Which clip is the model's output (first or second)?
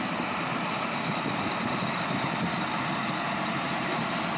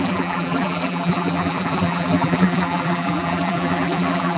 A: second